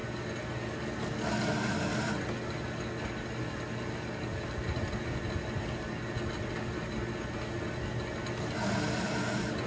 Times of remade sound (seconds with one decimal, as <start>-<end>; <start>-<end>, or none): none